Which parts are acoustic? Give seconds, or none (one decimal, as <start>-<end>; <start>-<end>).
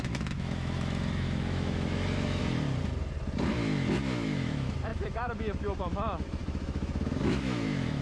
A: 2.4-4.0